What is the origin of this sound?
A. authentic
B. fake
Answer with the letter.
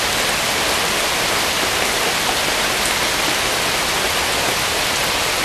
A